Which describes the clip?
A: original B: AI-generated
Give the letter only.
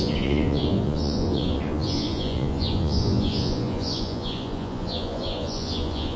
B